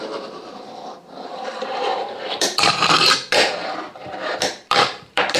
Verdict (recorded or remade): remade